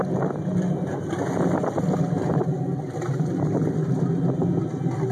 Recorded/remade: recorded